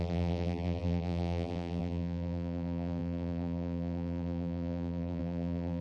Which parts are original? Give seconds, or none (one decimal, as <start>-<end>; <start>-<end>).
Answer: none